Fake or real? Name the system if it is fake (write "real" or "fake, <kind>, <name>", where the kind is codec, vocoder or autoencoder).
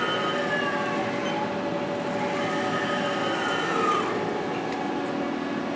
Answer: real